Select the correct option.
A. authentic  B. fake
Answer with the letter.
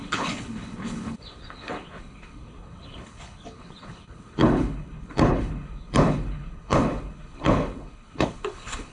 B